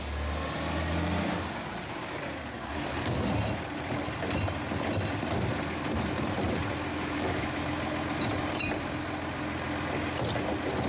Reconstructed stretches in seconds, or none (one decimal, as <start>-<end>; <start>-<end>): 6.9-7.6